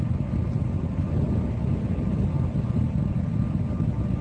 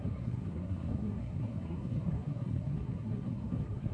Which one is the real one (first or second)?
first